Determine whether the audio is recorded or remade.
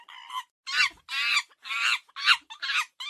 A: recorded